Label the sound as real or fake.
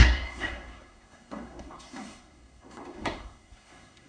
fake